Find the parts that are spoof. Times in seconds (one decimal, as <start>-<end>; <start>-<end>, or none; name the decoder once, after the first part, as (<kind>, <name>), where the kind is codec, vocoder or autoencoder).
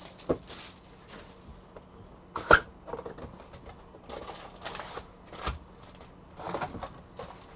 none